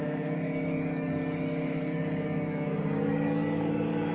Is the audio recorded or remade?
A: remade